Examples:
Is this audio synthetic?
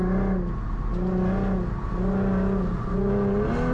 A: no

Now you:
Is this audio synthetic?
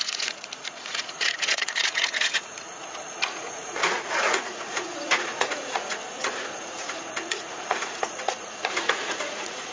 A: yes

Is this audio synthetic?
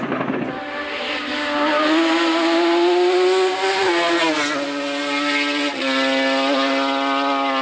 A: no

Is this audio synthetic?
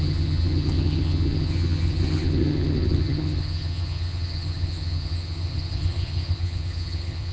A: yes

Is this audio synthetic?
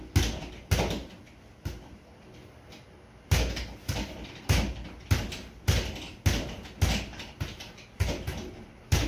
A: no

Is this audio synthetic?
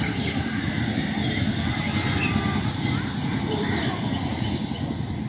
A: no